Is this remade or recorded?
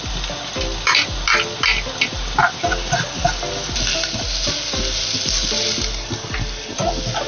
recorded